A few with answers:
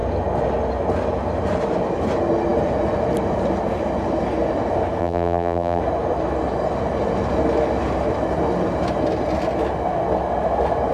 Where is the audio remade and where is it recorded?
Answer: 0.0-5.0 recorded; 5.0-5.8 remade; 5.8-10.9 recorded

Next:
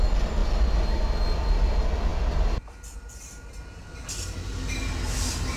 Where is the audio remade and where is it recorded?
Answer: 0.0-5.6 recorded

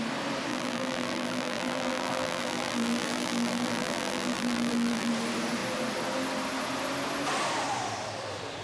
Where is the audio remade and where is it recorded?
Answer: 0.0-0.5 recorded; 0.5-5.1 remade; 5.1-8.6 recorded